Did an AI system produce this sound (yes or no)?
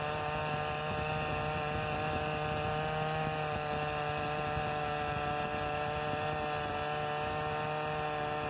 no